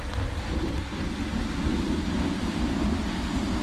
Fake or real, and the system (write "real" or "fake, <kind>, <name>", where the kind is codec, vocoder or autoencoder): real